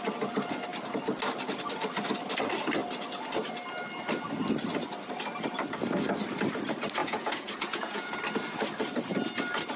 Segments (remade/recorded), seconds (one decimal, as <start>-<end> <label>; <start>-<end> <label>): 0.0-7.0 recorded; 7.0-8.2 remade; 8.2-9.8 recorded